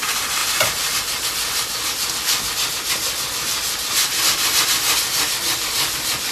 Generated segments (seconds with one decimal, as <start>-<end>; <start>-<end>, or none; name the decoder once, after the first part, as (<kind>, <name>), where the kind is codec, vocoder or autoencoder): none